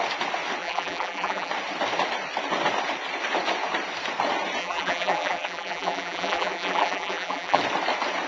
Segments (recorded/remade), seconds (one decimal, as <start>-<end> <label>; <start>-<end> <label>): 0.0-0.6 recorded; 0.6-1.5 remade; 1.5-4.6 recorded; 4.6-7.6 remade; 7.6-8.3 recorded